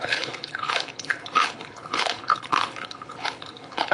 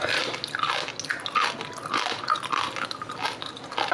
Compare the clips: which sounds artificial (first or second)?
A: first